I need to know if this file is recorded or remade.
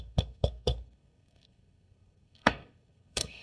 remade